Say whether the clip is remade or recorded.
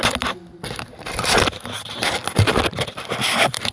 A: recorded